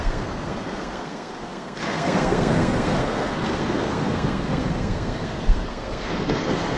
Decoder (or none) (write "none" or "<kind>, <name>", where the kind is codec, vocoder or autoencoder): codec, SNAC